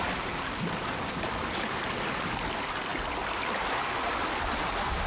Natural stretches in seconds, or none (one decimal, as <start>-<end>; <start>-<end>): 0.0-5.1